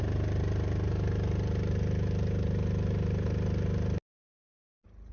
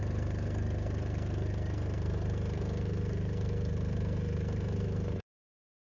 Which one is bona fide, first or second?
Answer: first